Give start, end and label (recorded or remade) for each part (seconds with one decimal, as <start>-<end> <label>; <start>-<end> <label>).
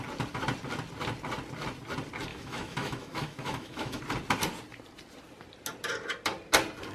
0.0-2.3 recorded; 2.3-4.0 remade; 4.0-6.9 recorded